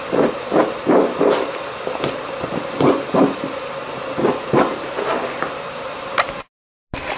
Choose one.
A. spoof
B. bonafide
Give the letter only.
B